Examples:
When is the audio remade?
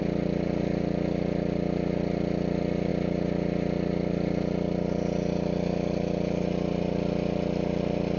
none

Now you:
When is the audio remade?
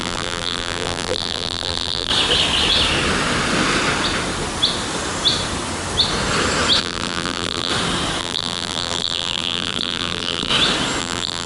0.0-2.1 (vocoder, BigVGAN v2); 6.8-7.7; 8.2-10.5; 11.0-11.5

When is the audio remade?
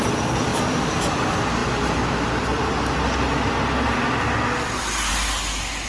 0.5-1.1 (vocoder, BigVGAN v2)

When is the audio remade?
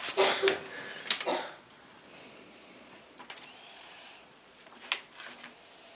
1.3-4.8 (vocoder, Vocos)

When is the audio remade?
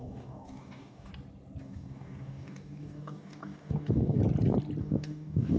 0.0-1.1 (codec, DAC); 1.6-4.2; 4.8-5.6